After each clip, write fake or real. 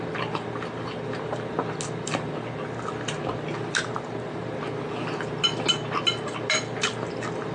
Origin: real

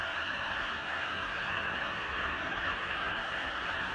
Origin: fake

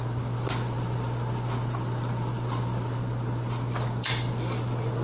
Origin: real